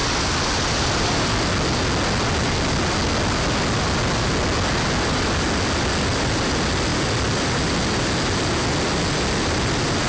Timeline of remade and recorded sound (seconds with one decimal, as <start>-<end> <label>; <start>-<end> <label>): 0.0-10.1 recorded